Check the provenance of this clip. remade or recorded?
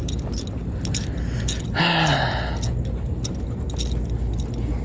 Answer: recorded